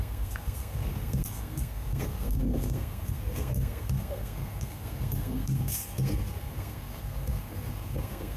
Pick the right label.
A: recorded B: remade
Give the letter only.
B